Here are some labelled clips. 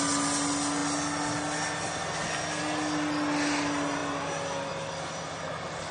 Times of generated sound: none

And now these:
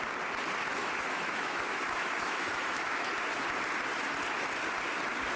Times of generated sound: 0.8-3.1 (autoencoder, DAC-VAE)

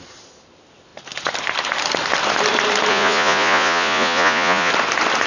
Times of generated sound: 2.9-4.7 (vocoder, Vocos)

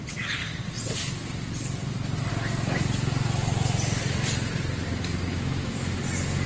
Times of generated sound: 5.3-6.0 (autoencoder, DAC-VAE)

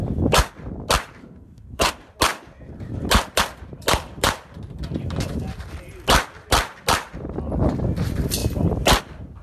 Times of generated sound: 1.2-1.9 (codec, SNAC)

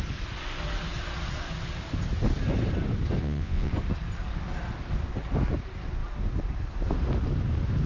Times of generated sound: 3.2-3.7 (vocoder, Vocos)

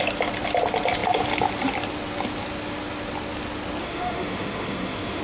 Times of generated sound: 3.8-5.2 (autoencoder, DAC-VAE)